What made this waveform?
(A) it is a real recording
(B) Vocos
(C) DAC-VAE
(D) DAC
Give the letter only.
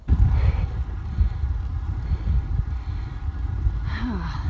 A